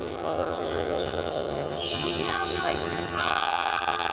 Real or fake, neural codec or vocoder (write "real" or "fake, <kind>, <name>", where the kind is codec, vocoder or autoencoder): fake, vocoder, HiFi-GAN